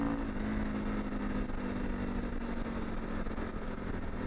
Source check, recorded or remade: recorded